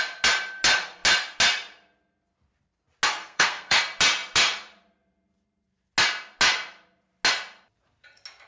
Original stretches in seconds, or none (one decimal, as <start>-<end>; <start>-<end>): 0.0-3.2; 3.8-8.5